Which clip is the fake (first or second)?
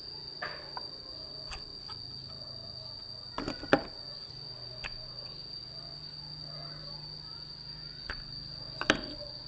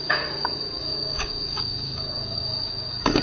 second